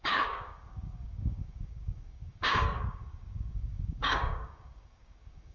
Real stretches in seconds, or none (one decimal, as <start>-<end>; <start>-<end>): none